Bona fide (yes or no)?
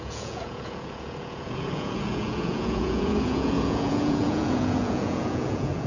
no